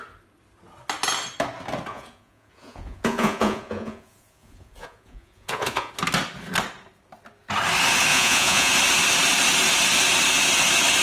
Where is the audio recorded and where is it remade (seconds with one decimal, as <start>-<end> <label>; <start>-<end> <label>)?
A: 0.0-1.9 recorded; 1.9-5.9 remade; 5.9-8.1 recorded; 8.1-8.7 remade; 8.7-11.0 recorded